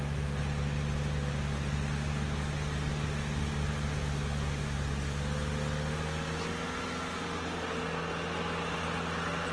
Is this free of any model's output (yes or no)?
yes